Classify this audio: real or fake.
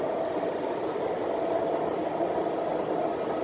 real